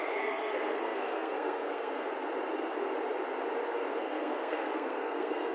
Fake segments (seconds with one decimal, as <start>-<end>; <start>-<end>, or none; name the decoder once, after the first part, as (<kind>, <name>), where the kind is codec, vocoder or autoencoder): 0.0-2.1 (codec, SNAC); 3.9-5.5

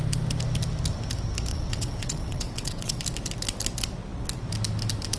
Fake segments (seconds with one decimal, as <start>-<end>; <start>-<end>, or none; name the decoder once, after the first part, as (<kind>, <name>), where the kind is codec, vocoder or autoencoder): 1.5-3.0 (vocoder, WaveNeXt)